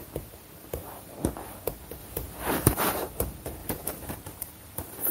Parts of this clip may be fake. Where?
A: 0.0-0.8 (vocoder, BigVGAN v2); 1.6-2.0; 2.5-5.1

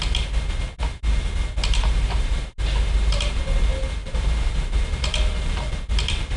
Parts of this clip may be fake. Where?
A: 1.6-3.4 (vocoder, BigVGAN v2); 4.0-5.7

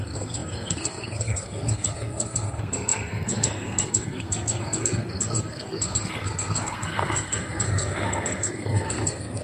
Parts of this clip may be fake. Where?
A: 0.0-9.4 (codec, SNAC)